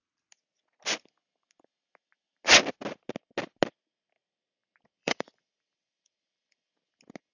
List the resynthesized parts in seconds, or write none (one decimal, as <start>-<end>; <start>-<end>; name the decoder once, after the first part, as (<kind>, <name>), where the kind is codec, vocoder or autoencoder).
5.0-6.7 (vocoder, BigVGAN v2)